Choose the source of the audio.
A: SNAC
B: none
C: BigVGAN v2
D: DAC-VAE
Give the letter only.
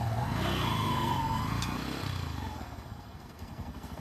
A